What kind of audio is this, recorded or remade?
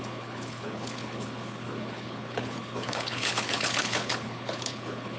remade